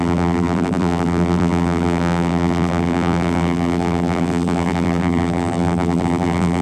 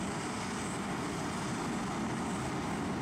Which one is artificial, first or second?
first